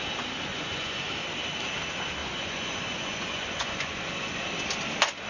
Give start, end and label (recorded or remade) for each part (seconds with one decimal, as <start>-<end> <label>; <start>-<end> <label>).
0.0-0.5 recorded; 0.5-1.1 remade; 1.1-2.2 recorded; 2.2-4.4 remade; 4.4-5.3 recorded

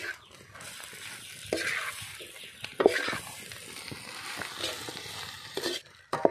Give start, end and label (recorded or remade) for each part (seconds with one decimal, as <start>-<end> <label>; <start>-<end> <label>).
0.0-4.9 recorded; 4.9-6.3 remade

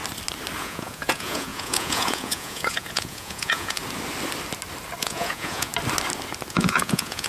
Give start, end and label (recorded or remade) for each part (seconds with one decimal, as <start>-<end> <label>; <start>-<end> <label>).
0.0-0.6 recorded; 0.6-3.8 remade; 3.8-5.0 recorded; 5.0-5.7 remade; 5.7-6.5 recorded; 6.5-7.3 remade

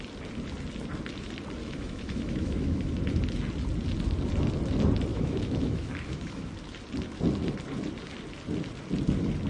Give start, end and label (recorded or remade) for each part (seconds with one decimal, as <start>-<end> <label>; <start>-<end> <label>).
0.0-1.6 recorded; 1.6-2.9 remade; 2.9-5.1 recorded; 5.1-6.5 remade; 6.5-9.5 recorded

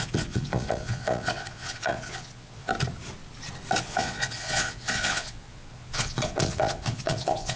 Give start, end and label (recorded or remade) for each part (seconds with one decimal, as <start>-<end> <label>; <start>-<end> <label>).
0.0-2.7 remade; 2.7-3.8 recorded; 3.8-7.6 remade

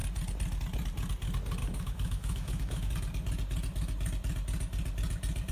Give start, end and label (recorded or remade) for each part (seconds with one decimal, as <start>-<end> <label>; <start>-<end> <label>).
0.0-1.6 recorded; 1.6-2.9 remade; 2.9-5.5 recorded

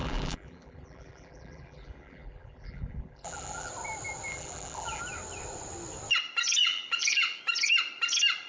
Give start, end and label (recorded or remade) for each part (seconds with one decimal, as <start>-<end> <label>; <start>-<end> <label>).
0.0-3.7 remade; 3.7-4.3 recorded; 4.3-5.0 remade; 5.0-6.6 recorded; 6.6-7.4 remade; 7.4-8.5 recorded

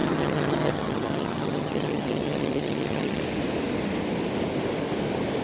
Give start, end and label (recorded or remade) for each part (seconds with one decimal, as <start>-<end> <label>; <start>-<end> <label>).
0.0-3.2 remade; 3.2-5.4 recorded